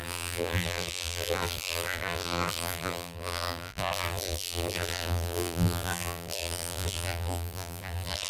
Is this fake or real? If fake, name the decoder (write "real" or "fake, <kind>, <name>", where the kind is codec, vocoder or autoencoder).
fake, vocoder, BigVGAN v2